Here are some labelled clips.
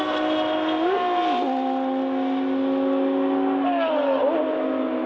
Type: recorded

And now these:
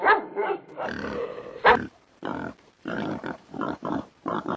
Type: remade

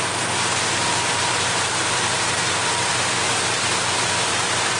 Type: recorded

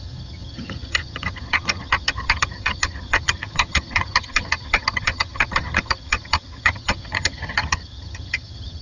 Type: remade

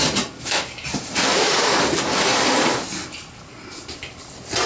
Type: recorded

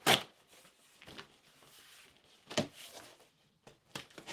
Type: recorded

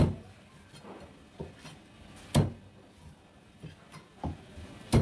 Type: recorded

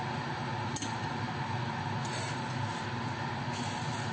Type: recorded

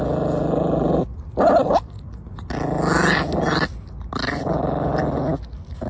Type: recorded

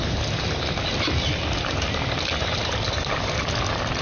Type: recorded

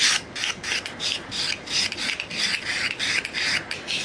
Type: recorded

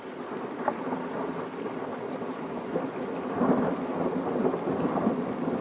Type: recorded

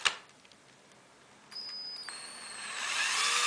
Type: recorded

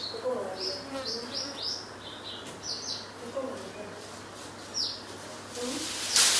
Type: recorded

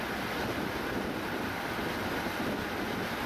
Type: recorded